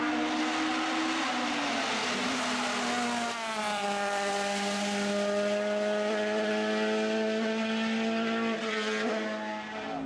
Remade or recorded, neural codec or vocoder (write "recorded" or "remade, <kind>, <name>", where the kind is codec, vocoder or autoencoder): recorded